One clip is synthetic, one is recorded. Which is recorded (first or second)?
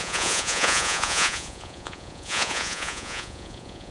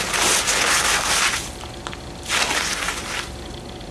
second